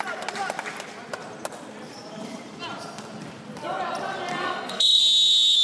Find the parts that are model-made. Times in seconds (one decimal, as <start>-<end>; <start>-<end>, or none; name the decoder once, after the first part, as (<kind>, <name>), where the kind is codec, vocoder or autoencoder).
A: 4.3-5.0 (codec, SNAC)